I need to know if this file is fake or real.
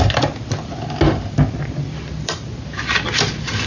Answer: real